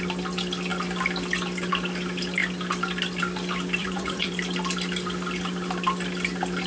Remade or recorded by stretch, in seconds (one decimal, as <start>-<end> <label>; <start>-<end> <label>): 0.0-3.8 recorded; 3.8-4.3 remade; 4.3-6.7 recorded